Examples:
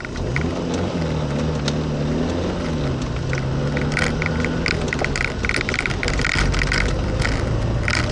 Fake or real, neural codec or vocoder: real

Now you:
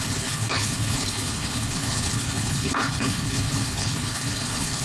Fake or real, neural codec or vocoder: fake, codec, HILCodec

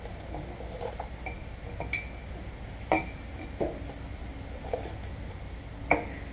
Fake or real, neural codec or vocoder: real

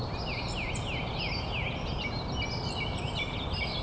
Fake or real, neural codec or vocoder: real